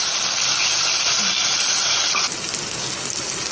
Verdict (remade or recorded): recorded